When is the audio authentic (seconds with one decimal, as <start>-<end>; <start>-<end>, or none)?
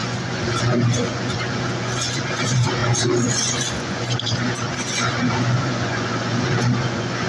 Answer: none